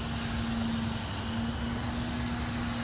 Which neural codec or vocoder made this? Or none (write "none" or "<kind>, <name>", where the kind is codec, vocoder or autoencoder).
none